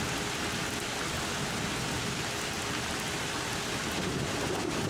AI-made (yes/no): no